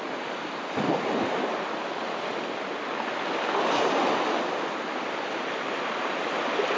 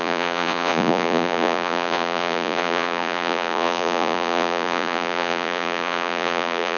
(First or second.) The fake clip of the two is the second